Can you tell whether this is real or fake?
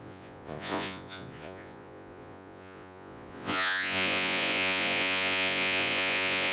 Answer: fake